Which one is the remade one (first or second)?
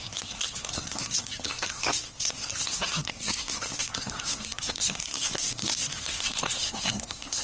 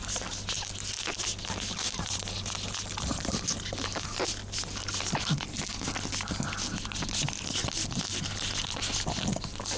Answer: first